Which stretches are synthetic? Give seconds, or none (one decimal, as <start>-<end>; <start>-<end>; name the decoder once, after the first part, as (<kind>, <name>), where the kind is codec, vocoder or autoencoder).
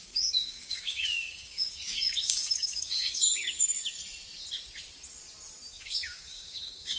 0.0-4.0 (codec, DAC); 5.7-7.0